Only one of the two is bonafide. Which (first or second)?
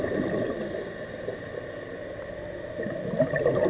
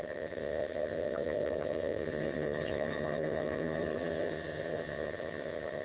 first